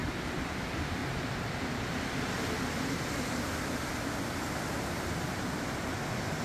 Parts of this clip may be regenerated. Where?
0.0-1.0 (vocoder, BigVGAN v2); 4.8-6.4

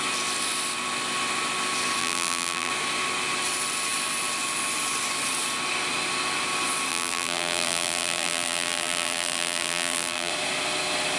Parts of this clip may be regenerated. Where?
2.0-2.7 (vocoder, BigVGAN v2); 6.9-10.3

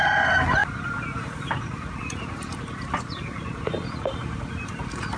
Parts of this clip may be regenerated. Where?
0.6-3.7 (vocoder, BigVGAN v2)

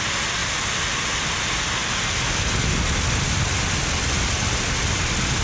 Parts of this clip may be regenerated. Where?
none